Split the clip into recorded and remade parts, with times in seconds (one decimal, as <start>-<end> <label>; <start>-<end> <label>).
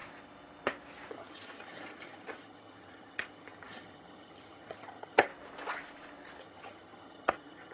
0.0-1.1 recorded; 1.1-5.3 remade; 5.3-6.4 recorded; 6.4-7.7 remade